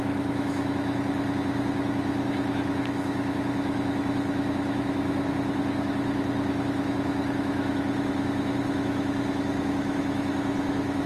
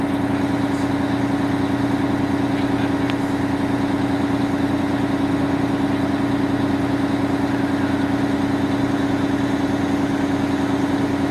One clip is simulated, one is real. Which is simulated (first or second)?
first